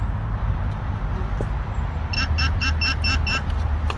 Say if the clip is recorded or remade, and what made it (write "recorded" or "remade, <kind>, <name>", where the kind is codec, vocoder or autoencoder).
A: recorded